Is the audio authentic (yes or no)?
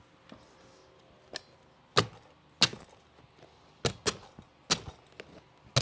yes